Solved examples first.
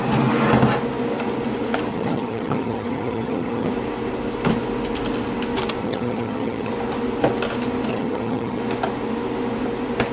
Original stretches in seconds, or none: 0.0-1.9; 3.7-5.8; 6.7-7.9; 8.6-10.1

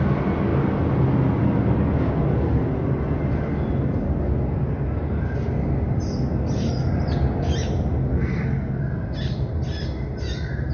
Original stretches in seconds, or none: 0.0-8.1; 8.8-10.7

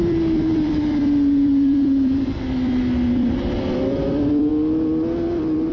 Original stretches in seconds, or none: 4.5-5.7

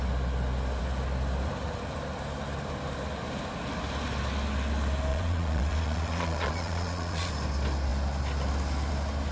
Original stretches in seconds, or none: 0.0-5.1; 7.3-9.3